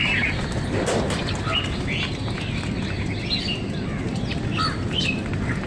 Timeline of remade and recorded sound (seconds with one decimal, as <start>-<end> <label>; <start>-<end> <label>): 0.0-5.7 recorded